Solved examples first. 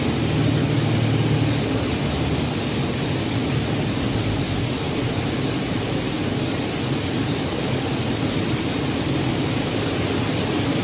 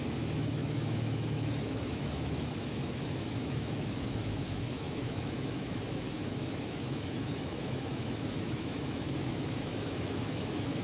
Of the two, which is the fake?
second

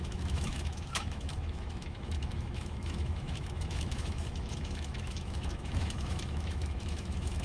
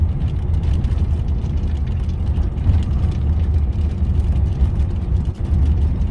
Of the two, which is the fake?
first